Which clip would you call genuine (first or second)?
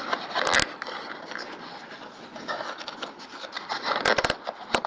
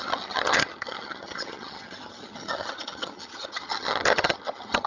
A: first